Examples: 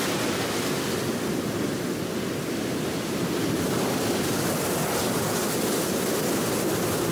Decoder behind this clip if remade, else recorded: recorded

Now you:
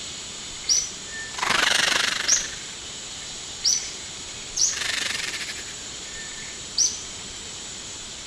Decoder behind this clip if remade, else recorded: remade, vocoder, BigVGAN v2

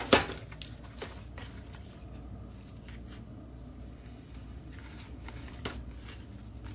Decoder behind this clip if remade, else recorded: recorded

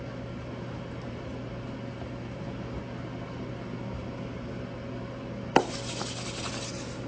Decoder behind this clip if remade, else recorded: recorded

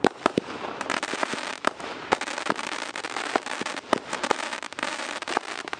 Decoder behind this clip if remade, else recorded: remade, vocoder, BigVGAN v2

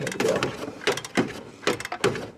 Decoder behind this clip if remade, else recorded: recorded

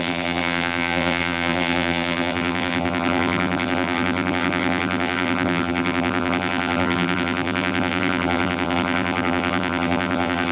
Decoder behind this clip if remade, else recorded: remade, vocoder, BigVGAN v2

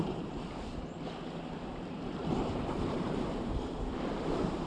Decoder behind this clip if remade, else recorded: remade, vocoder, BigVGAN v2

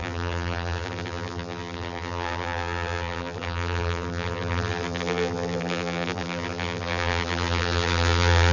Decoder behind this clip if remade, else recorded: remade, vocoder, BigVGAN v2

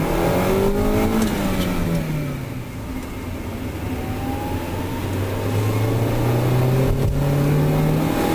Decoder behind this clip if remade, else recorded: recorded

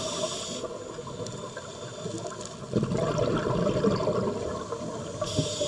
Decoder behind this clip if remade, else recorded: recorded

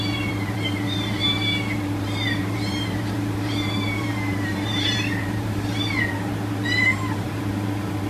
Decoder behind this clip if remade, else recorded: remade, vocoder, BigVGAN v2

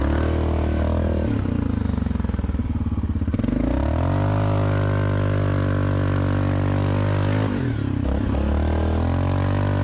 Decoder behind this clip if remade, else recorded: recorded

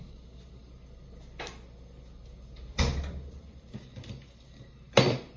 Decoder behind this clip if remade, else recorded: recorded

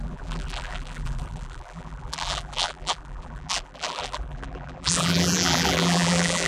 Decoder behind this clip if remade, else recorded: remade, vocoder, BigVGAN v2